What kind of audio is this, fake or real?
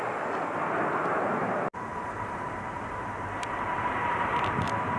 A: real